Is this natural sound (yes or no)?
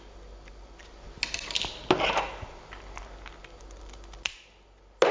yes